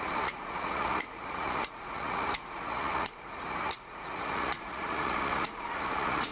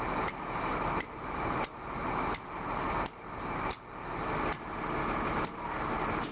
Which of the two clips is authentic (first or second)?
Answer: second